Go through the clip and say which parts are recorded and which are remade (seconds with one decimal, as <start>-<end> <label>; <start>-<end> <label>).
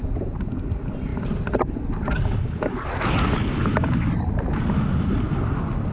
0.0-5.9 recorded